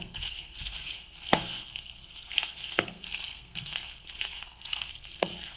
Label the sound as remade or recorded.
remade